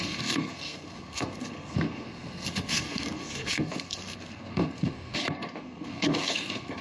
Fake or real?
fake